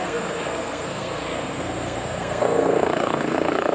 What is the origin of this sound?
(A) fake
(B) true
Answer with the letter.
A